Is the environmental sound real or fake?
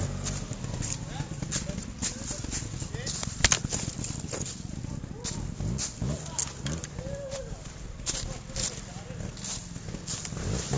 real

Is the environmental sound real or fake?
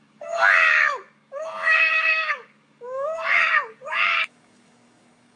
fake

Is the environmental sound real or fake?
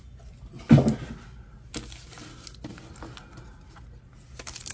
real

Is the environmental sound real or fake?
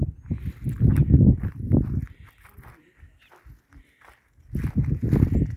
real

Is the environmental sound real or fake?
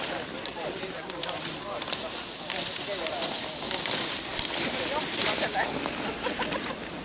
real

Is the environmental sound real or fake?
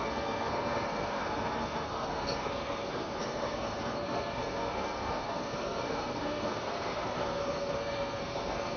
fake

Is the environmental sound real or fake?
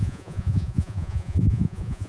fake